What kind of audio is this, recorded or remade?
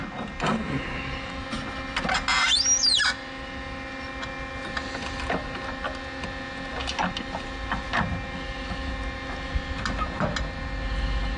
recorded